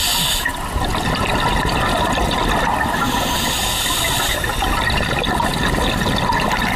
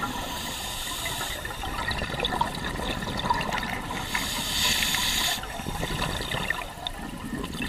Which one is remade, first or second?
second